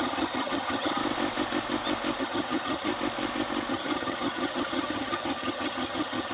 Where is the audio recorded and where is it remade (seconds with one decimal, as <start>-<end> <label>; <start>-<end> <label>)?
0.0-1.0 remade; 1.0-2.2 recorded; 2.2-2.9 remade; 2.9-3.7 recorded; 3.7-6.3 remade